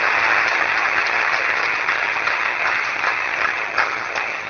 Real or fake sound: fake